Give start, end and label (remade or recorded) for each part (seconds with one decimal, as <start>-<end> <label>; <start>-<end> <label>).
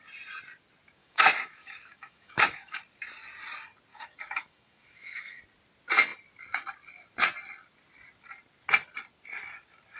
0.0-1.0 recorded; 1.0-2.8 remade; 2.8-3.9 recorded; 3.9-5.4 remade; 5.4-10.0 recorded